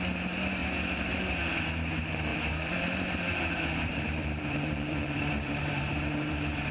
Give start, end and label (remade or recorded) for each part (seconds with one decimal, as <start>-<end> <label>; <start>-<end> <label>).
0.0-2.3 recorded; 2.3-6.3 remade; 6.3-6.7 recorded